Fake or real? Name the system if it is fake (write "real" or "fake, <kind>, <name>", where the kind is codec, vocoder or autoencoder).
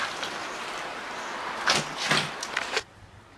real